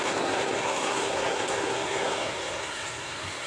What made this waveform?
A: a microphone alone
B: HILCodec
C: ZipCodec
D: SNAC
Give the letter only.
D